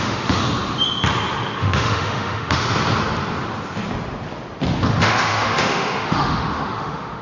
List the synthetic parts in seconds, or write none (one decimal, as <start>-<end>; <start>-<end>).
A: 0.0-0.4; 1.6-2.6; 5.0-7.2